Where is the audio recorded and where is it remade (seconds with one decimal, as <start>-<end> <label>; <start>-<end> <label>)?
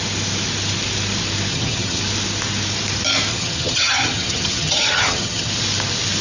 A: 0.0-1.5 recorded; 1.5-2.0 remade; 2.0-3.3 recorded; 3.3-5.5 remade; 5.5-6.2 recorded